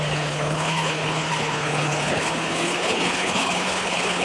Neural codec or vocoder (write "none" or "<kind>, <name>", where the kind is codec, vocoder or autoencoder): codec, HILCodec